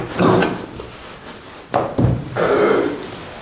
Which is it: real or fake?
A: real